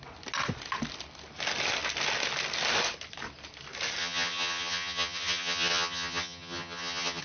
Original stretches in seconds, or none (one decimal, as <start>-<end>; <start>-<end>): 0.0-4.0